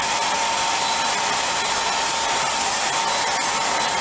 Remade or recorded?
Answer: recorded